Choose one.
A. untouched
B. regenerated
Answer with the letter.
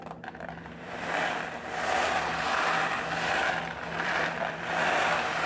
B